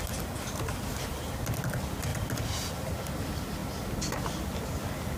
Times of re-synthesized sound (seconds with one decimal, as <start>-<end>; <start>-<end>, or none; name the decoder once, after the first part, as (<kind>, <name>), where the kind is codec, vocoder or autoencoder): none